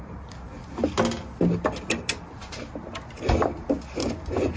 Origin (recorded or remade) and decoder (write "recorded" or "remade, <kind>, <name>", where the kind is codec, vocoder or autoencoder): recorded